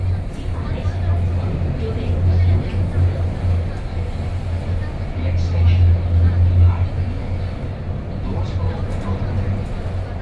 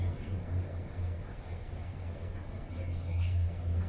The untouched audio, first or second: first